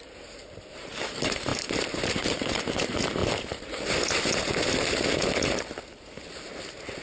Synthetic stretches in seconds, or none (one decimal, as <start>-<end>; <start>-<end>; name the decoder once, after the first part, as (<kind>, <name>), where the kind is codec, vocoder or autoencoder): 0.0-3.2 (vocoder, BigVGAN v2)